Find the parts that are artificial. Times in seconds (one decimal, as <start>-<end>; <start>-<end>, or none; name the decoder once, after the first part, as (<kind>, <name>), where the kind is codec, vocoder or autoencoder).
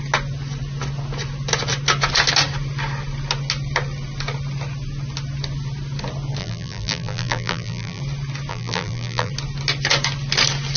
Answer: 6.4-8.0 (vocoder, BigVGAN v2); 8.5-9.3